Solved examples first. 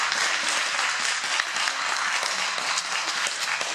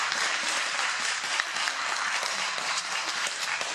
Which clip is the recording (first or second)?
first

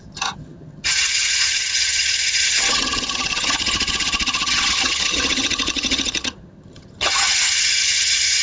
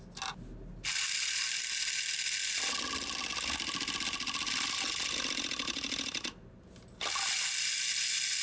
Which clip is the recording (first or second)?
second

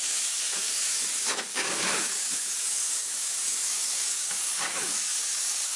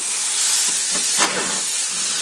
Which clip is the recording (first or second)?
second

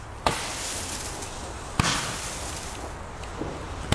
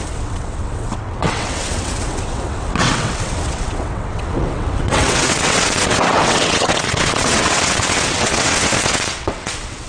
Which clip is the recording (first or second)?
first